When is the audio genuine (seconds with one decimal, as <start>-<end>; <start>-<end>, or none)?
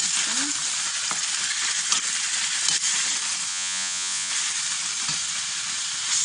0.0-3.5; 4.3-6.2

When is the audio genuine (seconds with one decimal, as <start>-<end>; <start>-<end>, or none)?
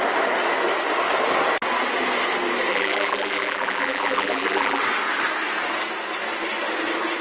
0.0-2.7; 4.8-7.2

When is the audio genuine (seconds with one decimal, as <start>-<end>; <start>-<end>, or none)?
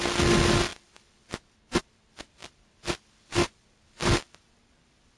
0.0-2.4; 3.5-5.2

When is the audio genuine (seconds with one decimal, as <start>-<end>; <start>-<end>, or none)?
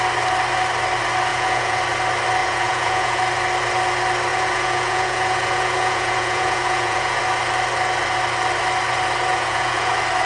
0.0-1.3; 1.8-2.4; 3.2-4.3; 7.2-9.3; 9.9-10.3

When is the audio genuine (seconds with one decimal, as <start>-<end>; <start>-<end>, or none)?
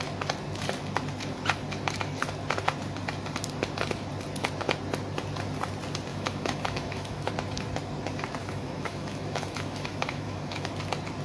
0.0-6.1; 7.3-8.4; 10.7-11.2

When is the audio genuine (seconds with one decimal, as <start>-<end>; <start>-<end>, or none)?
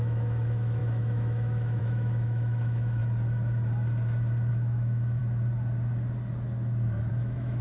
3.0-4.5; 5.2-7.1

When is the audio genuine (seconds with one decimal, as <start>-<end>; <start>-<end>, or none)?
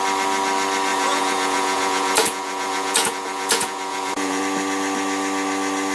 0.0-0.9; 4.4-5.9